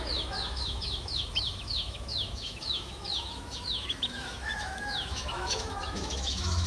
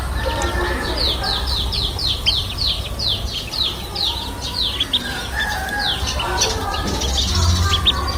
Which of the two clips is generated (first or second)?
first